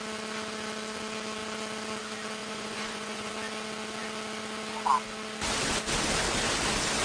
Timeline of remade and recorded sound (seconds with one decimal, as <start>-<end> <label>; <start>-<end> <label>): 0.0-2.4 recorded; 2.4-3.3 remade; 3.3-7.0 recorded